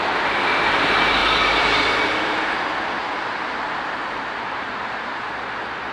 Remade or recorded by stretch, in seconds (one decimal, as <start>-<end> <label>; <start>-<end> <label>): 0.0-1.2 recorded; 1.2-2.6 remade; 2.6-4.0 recorded; 4.0-5.1 remade; 5.1-5.9 recorded